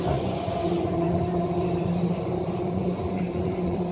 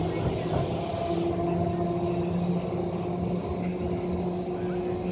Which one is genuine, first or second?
second